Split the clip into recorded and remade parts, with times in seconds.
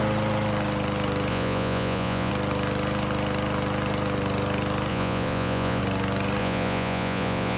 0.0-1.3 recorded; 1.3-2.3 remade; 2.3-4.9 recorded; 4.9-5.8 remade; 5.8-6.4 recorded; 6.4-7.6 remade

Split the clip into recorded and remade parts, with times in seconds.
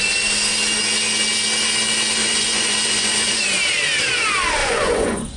0.0-2.2 recorded; 2.2-3.4 remade; 3.4-4.6 recorded; 4.6-5.4 remade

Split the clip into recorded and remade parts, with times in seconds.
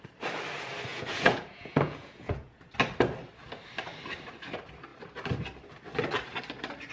0.0-0.9 recorded; 0.9-2.6 remade; 2.6-6.9 recorded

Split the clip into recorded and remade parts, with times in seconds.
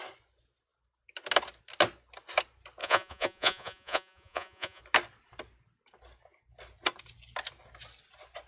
0.0-2.8 recorded; 2.8-4.8 remade; 4.8-8.5 recorded